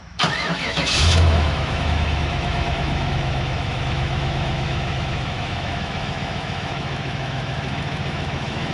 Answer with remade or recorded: remade